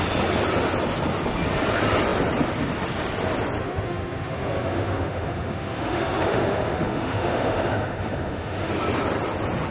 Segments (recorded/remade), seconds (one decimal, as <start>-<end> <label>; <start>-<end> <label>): 0.0-3.6 recorded; 3.6-8.7 remade; 8.7-9.7 recorded